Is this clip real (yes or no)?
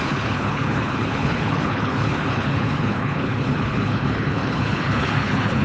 no